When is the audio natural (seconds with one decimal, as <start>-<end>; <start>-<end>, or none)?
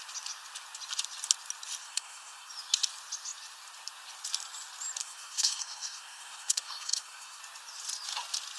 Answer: 0.0-1.8; 2.5-5.0; 7.4-8.6